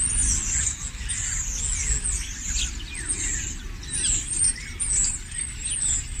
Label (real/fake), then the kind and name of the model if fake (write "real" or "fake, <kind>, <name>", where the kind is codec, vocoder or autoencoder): real